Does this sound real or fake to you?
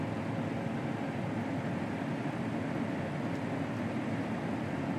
real